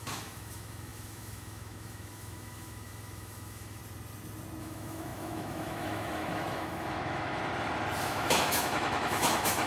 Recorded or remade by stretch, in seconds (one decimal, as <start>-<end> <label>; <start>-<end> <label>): 0.0-3.8 remade; 3.8-4.6 recorded; 4.6-7.4 remade; 7.4-8.0 recorded; 8.0-9.7 remade